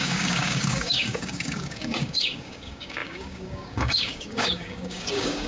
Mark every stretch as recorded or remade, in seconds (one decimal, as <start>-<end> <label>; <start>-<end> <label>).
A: 0.0-5.5 remade